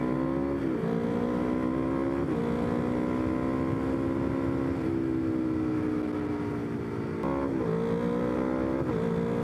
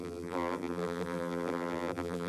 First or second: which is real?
first